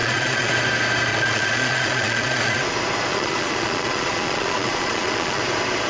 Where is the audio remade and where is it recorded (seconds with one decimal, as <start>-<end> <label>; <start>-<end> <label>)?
0.0-0.5 remade; 0.5-1.1 recorded; 1.1-2.6 remade; 2.6-3.1 recorded; 3.1-5.4 remade; 5.4-5.9 recorded